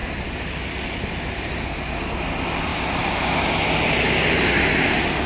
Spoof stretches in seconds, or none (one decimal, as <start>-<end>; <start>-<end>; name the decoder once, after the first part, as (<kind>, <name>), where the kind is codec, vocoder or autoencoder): none